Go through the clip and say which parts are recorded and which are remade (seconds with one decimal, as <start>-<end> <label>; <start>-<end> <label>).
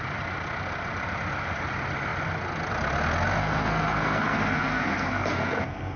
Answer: 0.0-3.4 recorded; 3.4-6.0 remade